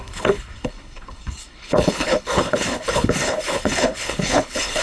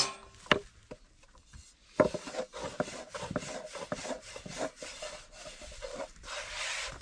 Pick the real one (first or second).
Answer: second